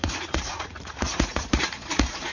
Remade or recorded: remade